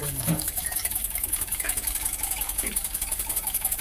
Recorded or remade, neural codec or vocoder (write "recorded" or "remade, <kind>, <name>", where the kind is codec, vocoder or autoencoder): remade, codec, DAC